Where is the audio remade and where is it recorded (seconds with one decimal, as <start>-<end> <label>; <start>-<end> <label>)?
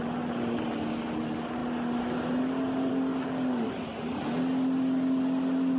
0.0-5.8 recorded